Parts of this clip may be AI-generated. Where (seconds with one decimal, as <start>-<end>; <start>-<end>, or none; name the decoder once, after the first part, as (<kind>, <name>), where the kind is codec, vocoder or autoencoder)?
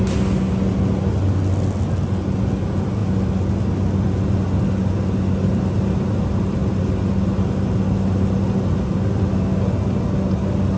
none